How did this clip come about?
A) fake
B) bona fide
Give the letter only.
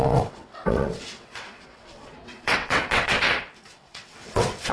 A